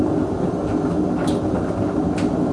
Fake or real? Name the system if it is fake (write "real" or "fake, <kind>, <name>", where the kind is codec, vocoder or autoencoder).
real